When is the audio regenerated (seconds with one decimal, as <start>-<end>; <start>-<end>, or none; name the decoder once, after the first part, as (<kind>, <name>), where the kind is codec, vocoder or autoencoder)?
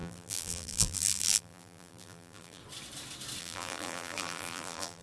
0.0-2.6 (vocoder, BigVGAN v2); 3.4-5.0